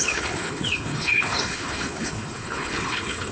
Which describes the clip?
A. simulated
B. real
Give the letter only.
A